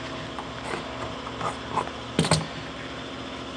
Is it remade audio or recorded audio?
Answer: recorded